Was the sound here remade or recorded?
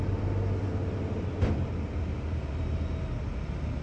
recorded